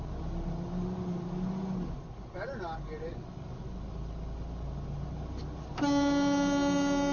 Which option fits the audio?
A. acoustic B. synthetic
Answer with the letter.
A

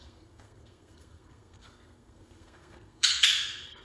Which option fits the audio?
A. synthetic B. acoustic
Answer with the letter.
A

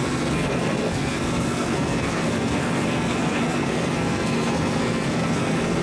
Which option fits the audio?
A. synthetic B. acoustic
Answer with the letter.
A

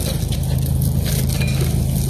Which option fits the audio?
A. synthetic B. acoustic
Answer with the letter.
B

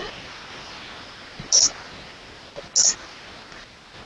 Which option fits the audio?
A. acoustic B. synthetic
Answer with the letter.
A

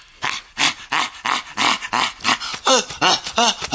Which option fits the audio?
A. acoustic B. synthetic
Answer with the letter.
A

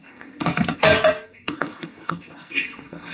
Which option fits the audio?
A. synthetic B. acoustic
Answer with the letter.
A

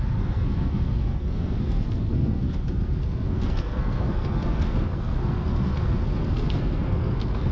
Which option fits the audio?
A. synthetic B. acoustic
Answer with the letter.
A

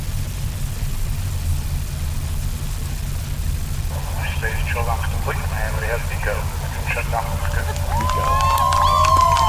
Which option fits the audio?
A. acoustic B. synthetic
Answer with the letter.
A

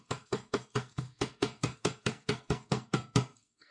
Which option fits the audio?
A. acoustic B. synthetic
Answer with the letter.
B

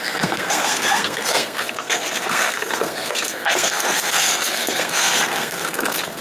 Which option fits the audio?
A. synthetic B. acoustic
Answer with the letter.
A